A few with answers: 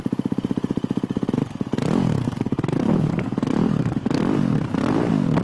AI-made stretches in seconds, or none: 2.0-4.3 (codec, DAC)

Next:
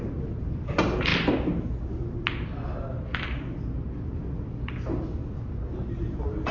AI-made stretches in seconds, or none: none

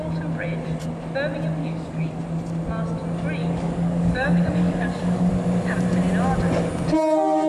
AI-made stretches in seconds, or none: 1.6-2.2 (codec, DAC); 3.4-5.3